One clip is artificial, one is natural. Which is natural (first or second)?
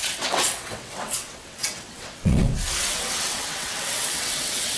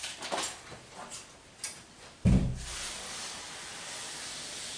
second